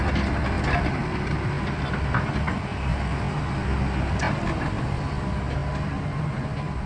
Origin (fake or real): real